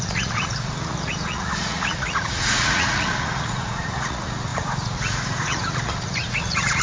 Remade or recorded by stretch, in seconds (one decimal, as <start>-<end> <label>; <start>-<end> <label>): 0.0-6.8 remade

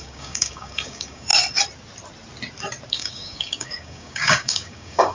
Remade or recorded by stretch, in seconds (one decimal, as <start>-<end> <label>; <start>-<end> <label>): 0.0-1.3 remade; 1.3-2.9 recorded; 2.9-5.1 remade

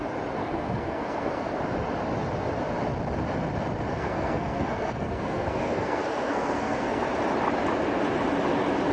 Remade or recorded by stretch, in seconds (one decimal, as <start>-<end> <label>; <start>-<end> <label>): 0.0-0.4 recorded; 0.4-1.6 remade; 1.6-3.9 recorded; 3.9-7.1 remade; 7.1-8.9 recorded

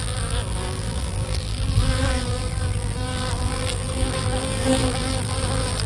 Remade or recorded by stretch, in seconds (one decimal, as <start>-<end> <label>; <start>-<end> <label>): 0.0-5.9 remade